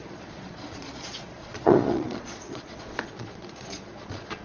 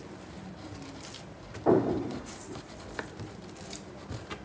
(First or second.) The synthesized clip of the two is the first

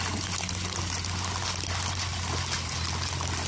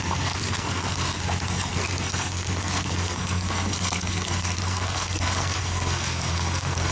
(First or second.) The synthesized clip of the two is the second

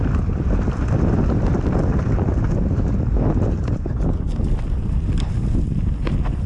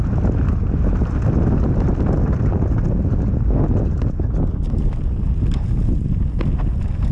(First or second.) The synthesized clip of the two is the first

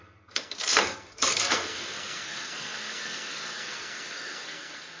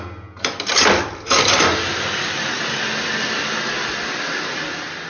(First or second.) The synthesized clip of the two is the first